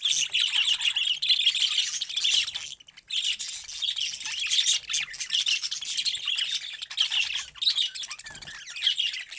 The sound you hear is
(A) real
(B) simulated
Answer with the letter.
A